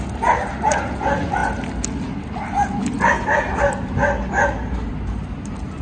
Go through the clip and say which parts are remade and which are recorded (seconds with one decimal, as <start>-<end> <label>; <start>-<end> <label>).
0.0-5.8 recorded